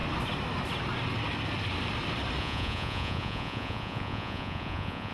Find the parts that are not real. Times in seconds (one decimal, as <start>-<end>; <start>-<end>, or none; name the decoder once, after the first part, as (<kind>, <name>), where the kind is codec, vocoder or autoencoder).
2.4-5.1 (vocoder, Vocos)